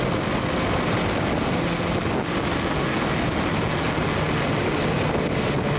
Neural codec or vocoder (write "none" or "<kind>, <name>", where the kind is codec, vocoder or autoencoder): none